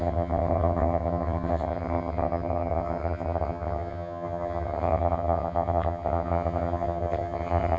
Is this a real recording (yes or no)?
no